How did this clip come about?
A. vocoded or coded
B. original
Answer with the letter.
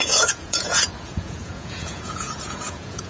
A